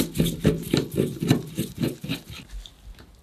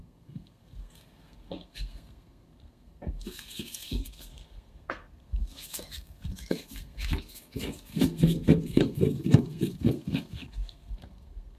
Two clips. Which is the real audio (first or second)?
first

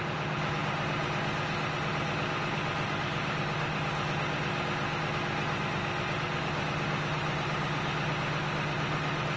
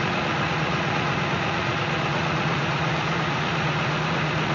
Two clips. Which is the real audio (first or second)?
first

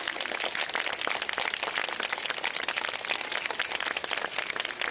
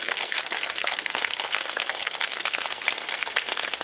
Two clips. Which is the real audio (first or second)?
first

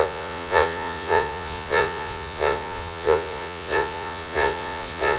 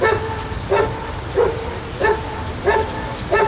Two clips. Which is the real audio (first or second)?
second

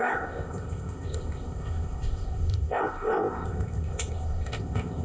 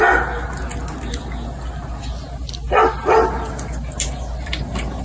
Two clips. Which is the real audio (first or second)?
second